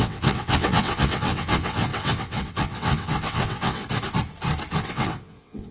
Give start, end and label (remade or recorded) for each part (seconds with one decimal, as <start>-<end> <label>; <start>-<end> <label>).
0.0-3.8 remade; 3.8-4.8 recorded; 4.8-5.7 remade